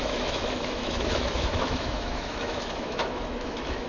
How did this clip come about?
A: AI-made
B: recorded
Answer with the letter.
A